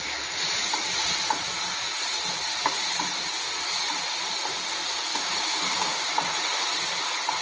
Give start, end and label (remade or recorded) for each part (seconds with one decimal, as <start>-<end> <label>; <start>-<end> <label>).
0.0-5.1 recorded; 5.1-6.1 remade; 6.1-7.4 recorded